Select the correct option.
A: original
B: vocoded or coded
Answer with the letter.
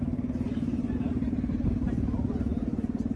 B